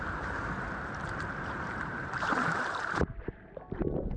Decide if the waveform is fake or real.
fake